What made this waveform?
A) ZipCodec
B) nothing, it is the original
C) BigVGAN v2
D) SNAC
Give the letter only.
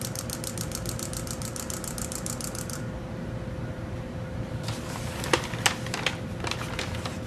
B